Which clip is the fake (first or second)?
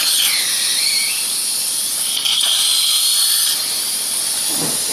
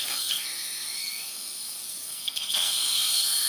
second